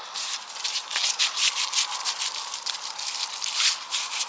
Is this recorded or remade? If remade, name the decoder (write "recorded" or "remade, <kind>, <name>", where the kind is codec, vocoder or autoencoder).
recorded